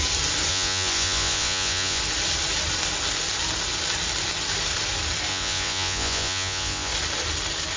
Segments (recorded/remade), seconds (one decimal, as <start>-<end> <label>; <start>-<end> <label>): 0.0-0.5 recorded; 0.5-2.0 remade; 2.0-5.3 recorded; 5.3-6.9 remade; 6.9-7.8 recorded